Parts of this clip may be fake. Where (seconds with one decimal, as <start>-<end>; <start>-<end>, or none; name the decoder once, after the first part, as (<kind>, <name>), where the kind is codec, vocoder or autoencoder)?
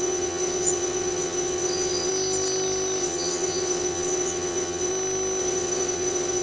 0.0-2.1 (vocoder, WaveNeXt); 3.0-4.9; 5.4-6.4